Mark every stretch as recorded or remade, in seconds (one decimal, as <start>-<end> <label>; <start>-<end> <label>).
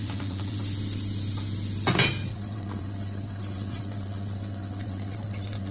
0.0-0.6 remade; 0.6-2.3 recorded; 2.3-5.7 remade